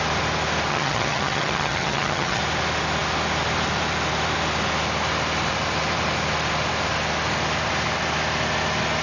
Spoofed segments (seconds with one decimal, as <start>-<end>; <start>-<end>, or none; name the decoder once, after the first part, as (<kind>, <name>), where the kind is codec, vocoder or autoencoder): 0.7-2.4 (vocoder, HiFi-GAN)